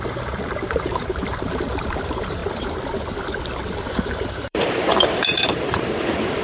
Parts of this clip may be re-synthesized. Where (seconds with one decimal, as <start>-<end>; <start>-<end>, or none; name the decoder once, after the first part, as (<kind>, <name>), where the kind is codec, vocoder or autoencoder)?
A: 0.0-2.4 (vocoder, BigVGAN v2); 3.9-6.4